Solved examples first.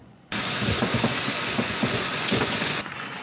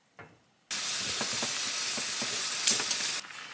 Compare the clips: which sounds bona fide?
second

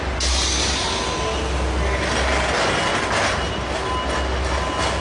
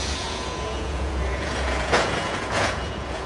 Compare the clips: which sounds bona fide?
first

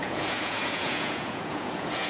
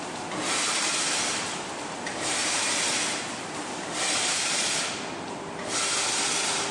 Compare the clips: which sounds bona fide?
second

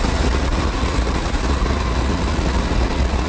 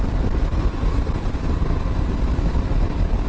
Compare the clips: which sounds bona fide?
second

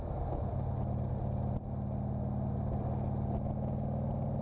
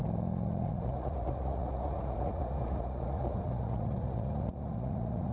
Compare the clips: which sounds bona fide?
first